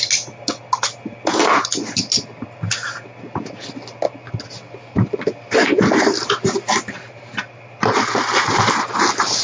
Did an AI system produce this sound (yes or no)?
no